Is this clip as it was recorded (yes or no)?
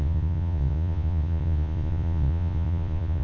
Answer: no